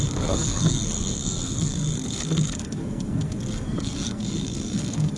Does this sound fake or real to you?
fake